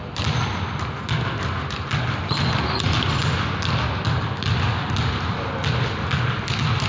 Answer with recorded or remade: recorded